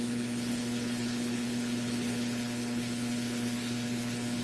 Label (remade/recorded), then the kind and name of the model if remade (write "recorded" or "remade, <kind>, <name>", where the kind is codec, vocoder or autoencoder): remade, codec, HILCodec